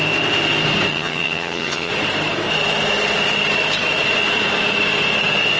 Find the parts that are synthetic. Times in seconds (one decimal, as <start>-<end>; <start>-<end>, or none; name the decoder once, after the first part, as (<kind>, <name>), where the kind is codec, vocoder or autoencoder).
0.9-1.9 (vocoder, HiFi-GAN)